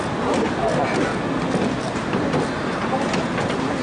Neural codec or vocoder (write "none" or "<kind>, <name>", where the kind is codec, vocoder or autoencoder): none